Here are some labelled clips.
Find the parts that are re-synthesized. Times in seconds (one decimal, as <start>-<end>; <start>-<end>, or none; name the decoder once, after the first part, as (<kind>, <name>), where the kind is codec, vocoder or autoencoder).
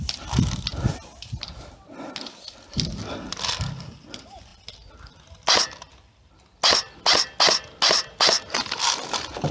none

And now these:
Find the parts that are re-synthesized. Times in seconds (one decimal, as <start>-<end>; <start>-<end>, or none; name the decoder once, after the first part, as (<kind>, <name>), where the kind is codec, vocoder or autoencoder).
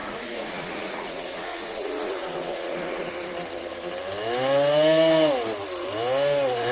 0.0-3.1 (vocoder, Vocos)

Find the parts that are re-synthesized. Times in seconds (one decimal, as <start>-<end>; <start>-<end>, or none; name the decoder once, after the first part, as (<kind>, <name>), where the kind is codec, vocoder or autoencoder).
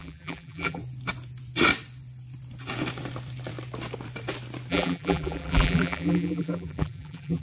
0.0-0.8 (vocoder, BigVGAN v2); 4.7-7.4